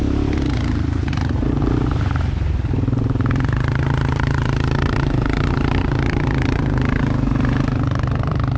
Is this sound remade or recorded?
remade